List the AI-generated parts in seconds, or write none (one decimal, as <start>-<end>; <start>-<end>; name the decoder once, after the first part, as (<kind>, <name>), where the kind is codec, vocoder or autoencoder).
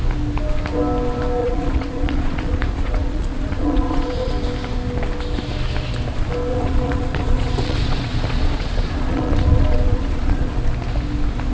1.4-4.3 (vocoder, Vocos); 6.5-10.6